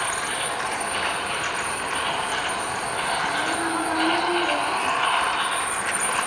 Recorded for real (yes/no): yes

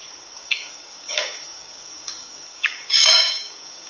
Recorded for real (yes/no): no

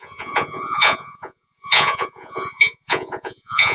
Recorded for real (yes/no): no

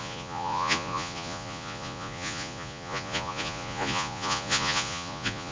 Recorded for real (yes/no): no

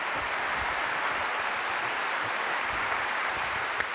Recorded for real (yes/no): yes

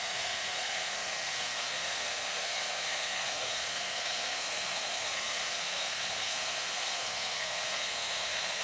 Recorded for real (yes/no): no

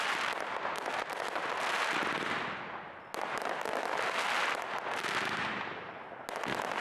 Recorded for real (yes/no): yes